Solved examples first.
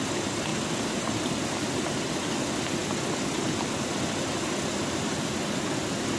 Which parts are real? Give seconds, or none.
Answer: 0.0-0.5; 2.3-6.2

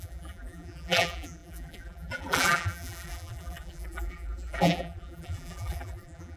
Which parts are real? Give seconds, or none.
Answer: none

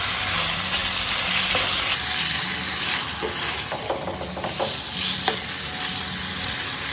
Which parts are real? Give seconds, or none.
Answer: 0.0-6.9